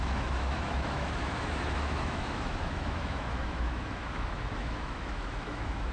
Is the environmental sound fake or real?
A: fake